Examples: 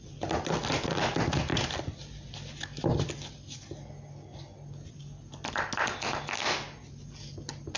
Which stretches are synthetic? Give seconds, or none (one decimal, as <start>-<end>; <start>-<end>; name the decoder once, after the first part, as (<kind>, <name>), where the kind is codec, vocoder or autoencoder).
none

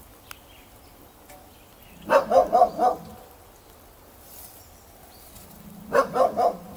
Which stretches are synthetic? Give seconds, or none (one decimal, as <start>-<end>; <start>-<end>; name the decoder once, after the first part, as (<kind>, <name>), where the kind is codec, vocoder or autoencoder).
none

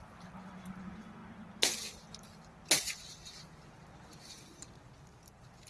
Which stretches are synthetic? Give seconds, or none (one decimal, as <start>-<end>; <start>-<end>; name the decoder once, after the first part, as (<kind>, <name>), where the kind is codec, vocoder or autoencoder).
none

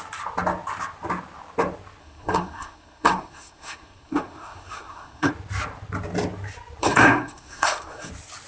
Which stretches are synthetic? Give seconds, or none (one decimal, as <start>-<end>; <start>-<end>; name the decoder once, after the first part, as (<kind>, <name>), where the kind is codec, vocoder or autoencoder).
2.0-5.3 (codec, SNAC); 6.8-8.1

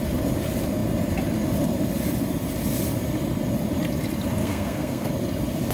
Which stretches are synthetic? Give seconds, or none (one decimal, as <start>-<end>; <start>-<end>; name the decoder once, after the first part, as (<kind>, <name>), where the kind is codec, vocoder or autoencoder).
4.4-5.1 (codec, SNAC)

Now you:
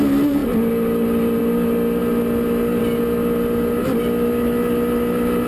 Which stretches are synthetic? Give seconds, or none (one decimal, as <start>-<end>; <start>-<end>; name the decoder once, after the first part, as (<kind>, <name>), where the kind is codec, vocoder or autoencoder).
none